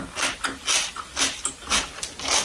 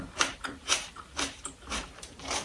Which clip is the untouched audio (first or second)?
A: first